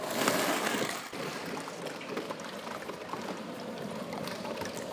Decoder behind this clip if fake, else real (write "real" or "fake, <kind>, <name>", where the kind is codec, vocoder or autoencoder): real